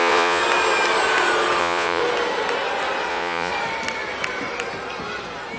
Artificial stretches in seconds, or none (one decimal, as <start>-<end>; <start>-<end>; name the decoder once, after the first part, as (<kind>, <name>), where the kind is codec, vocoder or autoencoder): 0.0-0.4 (vocoder, Vocos); 1.6-2.0; 3.1-3.5